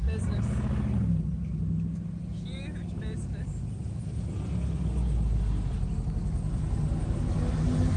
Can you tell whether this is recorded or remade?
recorded